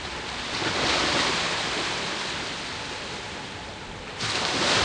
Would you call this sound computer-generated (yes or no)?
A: no